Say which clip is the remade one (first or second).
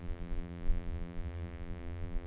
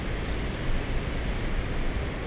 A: first